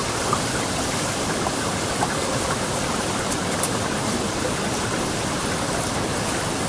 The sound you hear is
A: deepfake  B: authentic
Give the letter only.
B